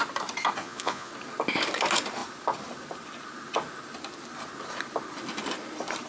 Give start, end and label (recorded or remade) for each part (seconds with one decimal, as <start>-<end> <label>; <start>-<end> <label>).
0.0-0.6 recorded; 0.6-1.1 remade; 1.1-6.1 recorded